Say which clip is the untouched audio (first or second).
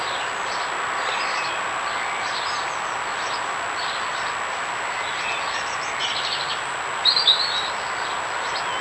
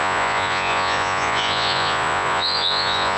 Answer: first